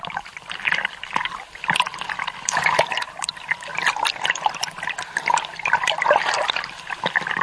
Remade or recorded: recorded